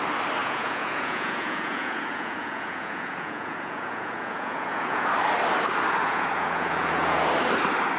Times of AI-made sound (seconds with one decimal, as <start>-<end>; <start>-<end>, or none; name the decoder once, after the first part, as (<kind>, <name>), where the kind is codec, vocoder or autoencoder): 0.4-5.1 (vocoder, Vocos); 6.0-7.3